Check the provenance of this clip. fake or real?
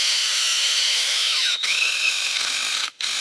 fake